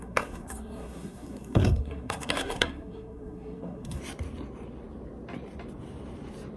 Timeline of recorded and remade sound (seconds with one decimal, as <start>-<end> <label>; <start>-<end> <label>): 0.0-4.0 remade; 4.0-6.6 recorded